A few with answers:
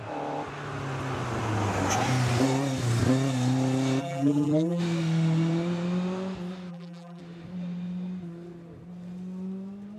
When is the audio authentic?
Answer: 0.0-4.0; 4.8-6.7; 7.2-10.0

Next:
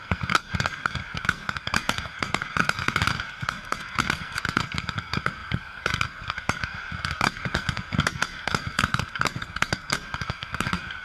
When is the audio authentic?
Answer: none

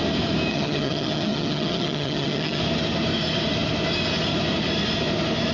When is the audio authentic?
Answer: 0.0-0.5; 2.6-5.5

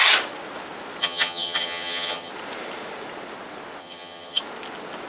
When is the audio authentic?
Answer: 0.0-1.0; 2.3-3.8; 4.4-5.1

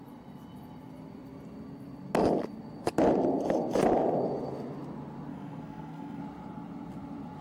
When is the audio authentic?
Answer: 0.0-5.3; 6.2-7.4

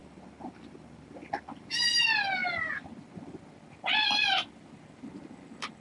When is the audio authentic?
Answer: 1.7-2.4; 5.0-5.8